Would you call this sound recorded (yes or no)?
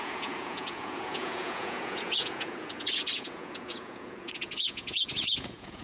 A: no